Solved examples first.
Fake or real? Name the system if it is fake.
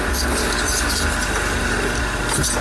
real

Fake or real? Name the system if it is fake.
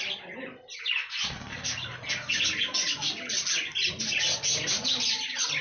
real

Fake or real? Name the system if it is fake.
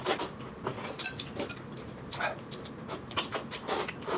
real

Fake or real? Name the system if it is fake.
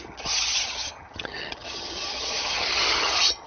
fake, vocoder, HiFi-GAN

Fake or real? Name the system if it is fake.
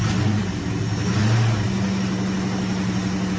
real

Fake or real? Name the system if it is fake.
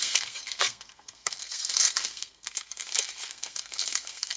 fake, codec, SNAC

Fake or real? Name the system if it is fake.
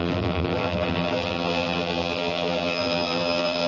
fake, vocoder, BigVGAN v2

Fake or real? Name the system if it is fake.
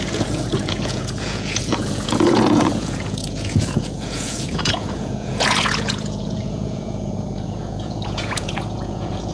fake, vocoder, Vocos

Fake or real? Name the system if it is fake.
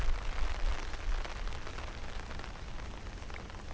real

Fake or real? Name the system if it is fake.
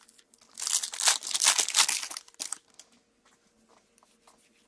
real